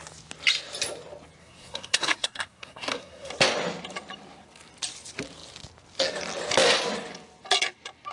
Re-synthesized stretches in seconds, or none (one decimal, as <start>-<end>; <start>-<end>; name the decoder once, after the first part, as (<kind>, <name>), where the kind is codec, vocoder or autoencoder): 1.4-3.3 (codec, SNAC)